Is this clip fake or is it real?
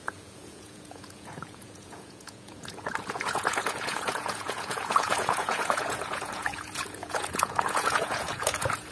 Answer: fake